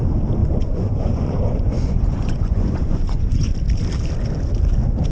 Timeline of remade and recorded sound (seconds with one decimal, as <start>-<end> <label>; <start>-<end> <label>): 0.0-0.4 recorded; 0.4-3.5 remade; 3.5-5.1 recorded